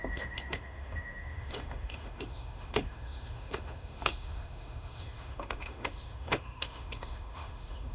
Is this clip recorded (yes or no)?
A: no